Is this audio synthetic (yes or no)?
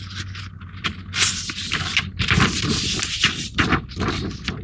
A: no